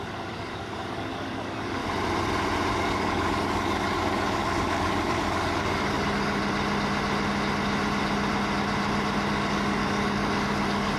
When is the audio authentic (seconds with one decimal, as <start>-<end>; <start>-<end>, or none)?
1.8-2.7; 6.4-9.3